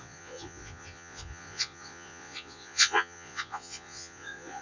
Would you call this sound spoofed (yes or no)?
yes